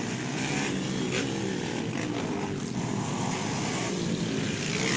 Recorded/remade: recorded